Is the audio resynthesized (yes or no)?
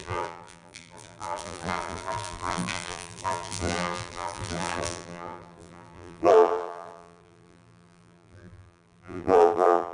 yes